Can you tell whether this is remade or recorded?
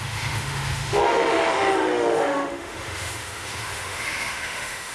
remade